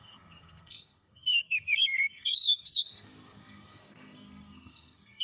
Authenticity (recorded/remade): remade